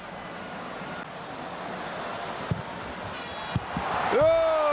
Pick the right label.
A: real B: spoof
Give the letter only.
A